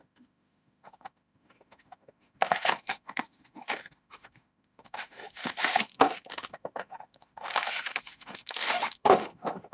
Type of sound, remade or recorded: remade